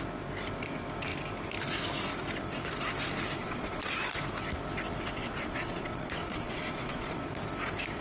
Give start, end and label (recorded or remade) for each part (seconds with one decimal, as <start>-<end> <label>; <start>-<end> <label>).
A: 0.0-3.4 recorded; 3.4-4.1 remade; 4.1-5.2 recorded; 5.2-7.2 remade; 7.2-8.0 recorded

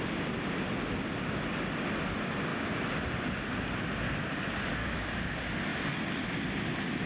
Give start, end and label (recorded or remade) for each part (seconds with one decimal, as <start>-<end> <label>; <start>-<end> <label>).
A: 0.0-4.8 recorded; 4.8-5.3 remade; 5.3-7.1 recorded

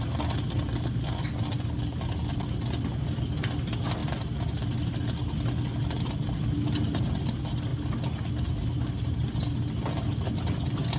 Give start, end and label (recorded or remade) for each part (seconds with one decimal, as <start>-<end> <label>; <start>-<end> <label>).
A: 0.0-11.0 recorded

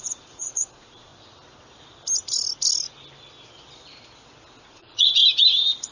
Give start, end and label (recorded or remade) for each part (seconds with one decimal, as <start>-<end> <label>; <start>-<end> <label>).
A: 0.0-1.1 remade; 1.1-4.6 recorded; 4.6-5.2 remade; 5.2-5.9 recorded